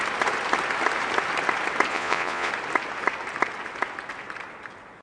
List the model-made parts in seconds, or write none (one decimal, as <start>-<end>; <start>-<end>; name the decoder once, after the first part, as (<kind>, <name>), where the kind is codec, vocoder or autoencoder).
1.9-2.5 (vocoder, Vocos)